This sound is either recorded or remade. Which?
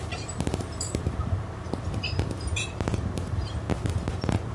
remade